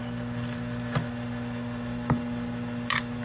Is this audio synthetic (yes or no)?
no